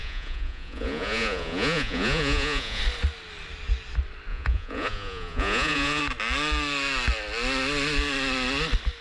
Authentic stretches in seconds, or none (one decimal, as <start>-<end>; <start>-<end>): 2.8-4.3; 6.0-9.0